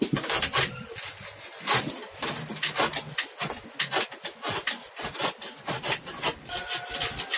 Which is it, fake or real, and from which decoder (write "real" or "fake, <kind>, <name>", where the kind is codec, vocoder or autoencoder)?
real